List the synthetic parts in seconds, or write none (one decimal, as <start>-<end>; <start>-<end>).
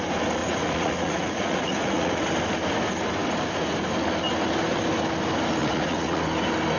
0.4-2.3; 5.6-6.2